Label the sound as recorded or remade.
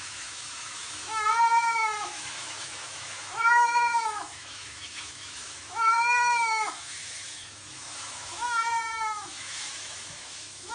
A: remade